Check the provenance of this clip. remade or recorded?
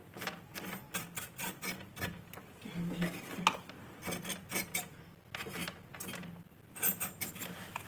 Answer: recorded